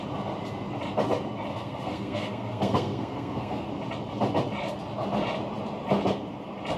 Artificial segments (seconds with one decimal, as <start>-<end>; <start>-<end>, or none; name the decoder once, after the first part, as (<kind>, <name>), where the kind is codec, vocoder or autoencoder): 1.5-3.7 (codec, SNAC)